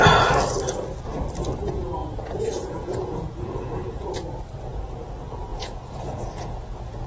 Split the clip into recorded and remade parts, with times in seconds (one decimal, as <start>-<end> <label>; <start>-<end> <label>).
0.0-2.0 recorded; 2.0-4.0 remade; 4.0-5.5 recorded; 5.5-7.1 remade